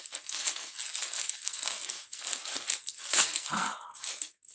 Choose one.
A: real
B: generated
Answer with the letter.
B